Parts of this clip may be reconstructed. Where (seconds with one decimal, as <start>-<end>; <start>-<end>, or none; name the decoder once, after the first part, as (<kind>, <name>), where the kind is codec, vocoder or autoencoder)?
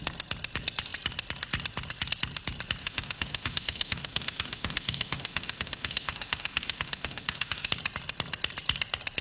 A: 2.8-7.7 (autoencoder, DAC-VAE)